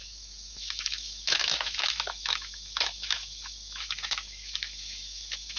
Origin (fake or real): fake